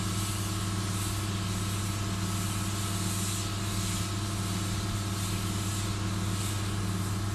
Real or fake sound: real